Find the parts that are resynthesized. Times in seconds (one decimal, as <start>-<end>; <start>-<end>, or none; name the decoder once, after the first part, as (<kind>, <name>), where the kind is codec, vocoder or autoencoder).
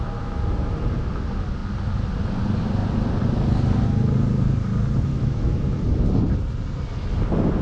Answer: 5.1-5.6 (autoencoder, DAC-VAE)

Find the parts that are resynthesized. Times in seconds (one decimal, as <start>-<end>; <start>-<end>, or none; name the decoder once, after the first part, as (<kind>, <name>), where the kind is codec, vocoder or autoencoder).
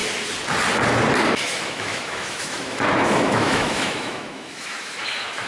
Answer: 1.4-5.5 (autoencoder, DAC-VAE)